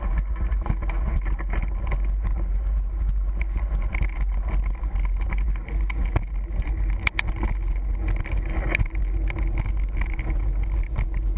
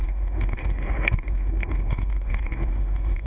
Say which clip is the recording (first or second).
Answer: first